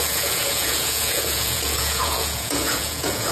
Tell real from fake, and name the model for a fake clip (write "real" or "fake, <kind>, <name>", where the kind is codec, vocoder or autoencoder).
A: fake, vocoder, Vocos